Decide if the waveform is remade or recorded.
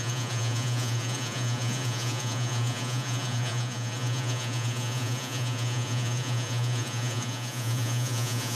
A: remade